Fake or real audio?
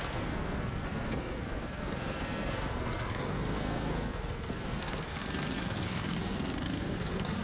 fake